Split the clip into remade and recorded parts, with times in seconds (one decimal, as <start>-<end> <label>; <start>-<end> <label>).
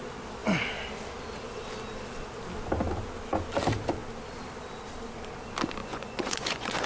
0.0-5.8 recorded; 5.8-6.9 remade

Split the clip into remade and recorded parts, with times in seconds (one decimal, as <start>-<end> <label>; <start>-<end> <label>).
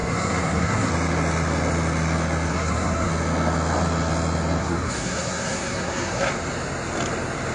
0.0-0.9 remade; 0.9-2.5 recorded; 2.5-3.1 remade; 3.1-4.6 recorded; 4.6-6.3 remade; 6.3-7.5 recorded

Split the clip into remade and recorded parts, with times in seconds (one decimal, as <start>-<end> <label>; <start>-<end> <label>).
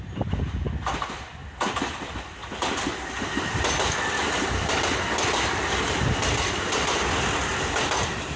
0.0-8.4 recorded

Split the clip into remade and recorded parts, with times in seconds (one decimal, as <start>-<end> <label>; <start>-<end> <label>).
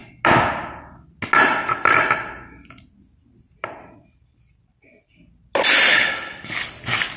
0.0-5.9 recorded; 5.9-6.5 remade; 6.5-7.2 recorded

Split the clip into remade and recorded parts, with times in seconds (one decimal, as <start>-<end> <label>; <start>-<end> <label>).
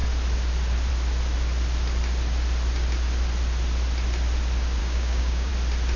0.0-4.8 recorded; 4.8-5.5 remade; 5.5-6.0 recorded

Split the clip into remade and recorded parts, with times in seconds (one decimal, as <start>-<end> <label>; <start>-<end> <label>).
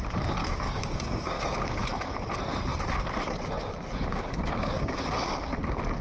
0.0-0.4 recorded; 0.4-1.8 remade; 1.8-4.1 recorded; 4.1-4.9 remade; 4.9-6.0 recorded